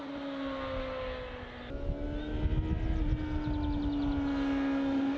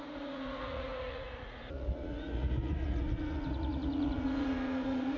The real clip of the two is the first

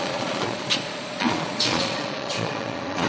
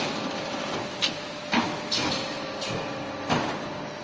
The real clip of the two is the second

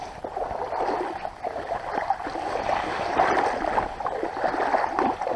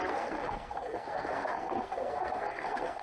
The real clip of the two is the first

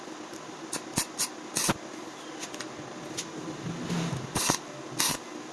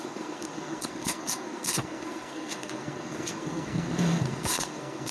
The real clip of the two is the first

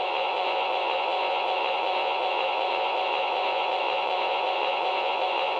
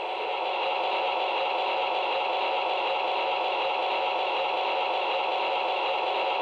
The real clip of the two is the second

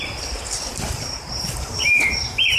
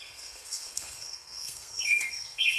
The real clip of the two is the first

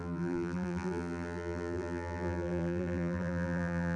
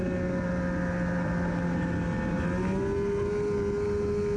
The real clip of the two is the second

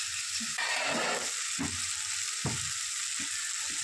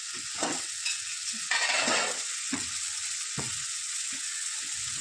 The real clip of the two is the first